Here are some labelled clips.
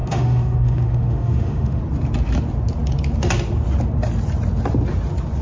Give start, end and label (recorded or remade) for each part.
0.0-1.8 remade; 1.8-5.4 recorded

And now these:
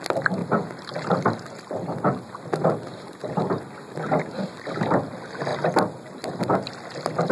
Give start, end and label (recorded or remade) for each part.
0.0-7.3 recorded

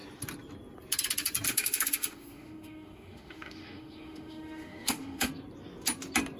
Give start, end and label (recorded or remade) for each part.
0.0-1.5 recorded; 1.5-5.3 remade; 5.3-6.4 recorded

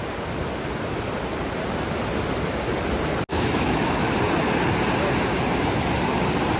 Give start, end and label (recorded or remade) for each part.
0.0-3.3 recorded; 3.3-4.1 remade; 4.1-6.6 recorded

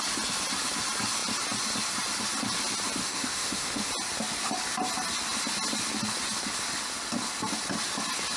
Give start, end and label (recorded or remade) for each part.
0.0-3.0 recorded; 3.0-3.9 remade; 3.9-8.4 recorded

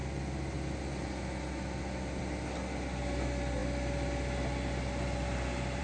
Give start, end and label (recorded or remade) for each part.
0.0-5.8 recorded